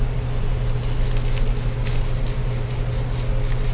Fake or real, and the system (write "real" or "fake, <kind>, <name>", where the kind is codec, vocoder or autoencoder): real